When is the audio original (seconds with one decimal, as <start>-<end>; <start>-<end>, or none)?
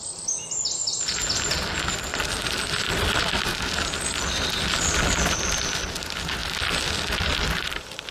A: 0.8-1.9; 3.5-4.2; 6.4-7.2